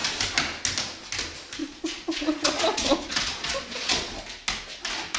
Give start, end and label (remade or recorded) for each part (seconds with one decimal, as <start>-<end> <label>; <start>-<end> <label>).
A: 0.0-1.6 recorded; 1.6-4.2 remade; 4.2-5.2 recorded

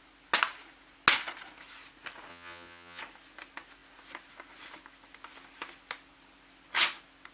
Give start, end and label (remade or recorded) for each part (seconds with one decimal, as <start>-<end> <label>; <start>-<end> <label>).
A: 0.0-2.3 recorded; 2.3-3.0 remade; 3.0-7.3 recorded

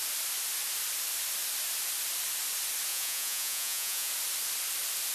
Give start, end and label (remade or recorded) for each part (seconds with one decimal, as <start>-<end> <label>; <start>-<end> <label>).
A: 0.0-2.9 recorded; 2.9-4.1 remade; 4.1-5.1 recorded

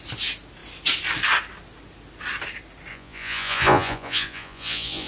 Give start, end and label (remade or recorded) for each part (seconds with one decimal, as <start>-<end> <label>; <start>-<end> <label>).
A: 0.0-2.9 recorded; 2.9-5.1 remade

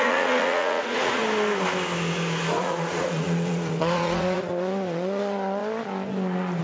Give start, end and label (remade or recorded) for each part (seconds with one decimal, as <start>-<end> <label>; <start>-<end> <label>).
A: 0.0-1.2 remade; 1.2-2.6 recorded; 2.6-5.6 remade; 5.6-6.6 recorded

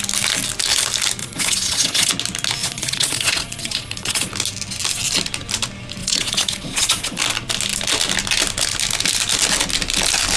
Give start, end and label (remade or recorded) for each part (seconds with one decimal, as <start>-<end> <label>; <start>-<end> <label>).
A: 0.0-1.2 recorded; 1.2-2.1 remade; 2.1-2.6 recorded; 2.6-4.3 remade; 4.3-6.0 recorded; 6.0-7.2 remade; 7.2-10.4 recorded

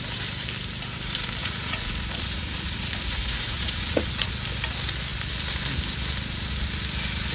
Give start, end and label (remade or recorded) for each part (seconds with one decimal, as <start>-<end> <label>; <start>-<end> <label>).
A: 0.0-1.4 recorded; 1.4-4.3 remade; 4.3-7.3 recorded

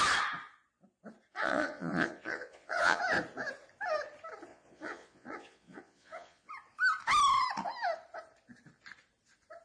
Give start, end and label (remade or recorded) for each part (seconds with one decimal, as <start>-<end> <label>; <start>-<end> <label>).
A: 0.0-1.3 recorded; 1.3-3.0 remade; 3.0-4.5 recorded; 4.5-6.5 remade; 6.5-9.6 recorded